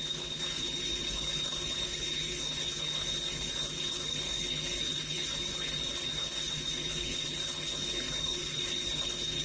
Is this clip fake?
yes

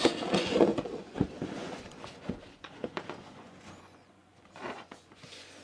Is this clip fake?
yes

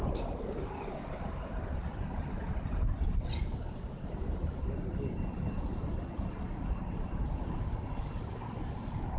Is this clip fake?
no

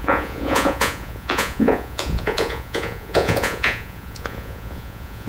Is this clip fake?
yes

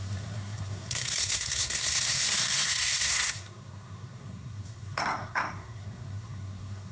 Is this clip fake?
yes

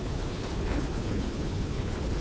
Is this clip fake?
yes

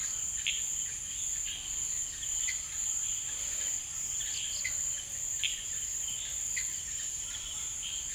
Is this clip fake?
no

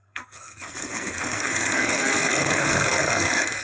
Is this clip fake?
yes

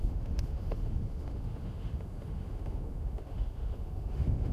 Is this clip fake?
yes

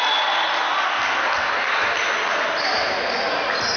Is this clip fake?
no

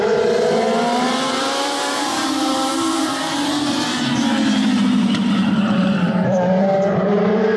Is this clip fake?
yes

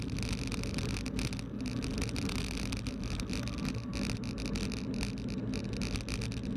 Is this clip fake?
no